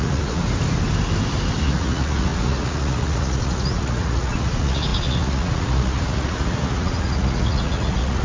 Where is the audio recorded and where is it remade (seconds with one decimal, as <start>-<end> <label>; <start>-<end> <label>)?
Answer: 0.0-0.4 remade; 0.4-1.6 recorded; 1.6-8.2 remade